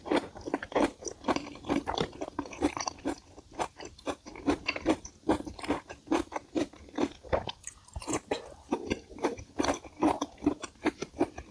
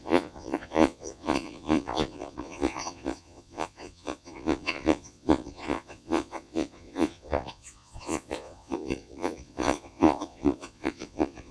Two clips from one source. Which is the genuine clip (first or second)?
first